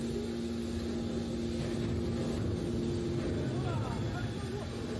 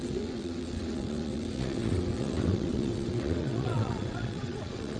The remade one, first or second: second